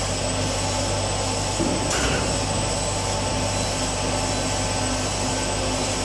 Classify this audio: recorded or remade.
recorded